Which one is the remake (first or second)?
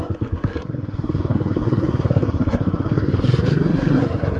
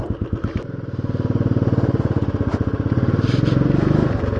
first